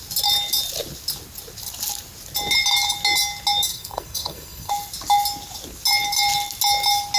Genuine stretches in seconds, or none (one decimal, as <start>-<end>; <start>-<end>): 0.0-3.7; 4.7-7.2